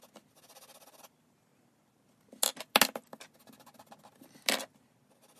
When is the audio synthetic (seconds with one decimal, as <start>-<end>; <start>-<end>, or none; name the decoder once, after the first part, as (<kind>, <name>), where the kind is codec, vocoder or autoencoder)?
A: none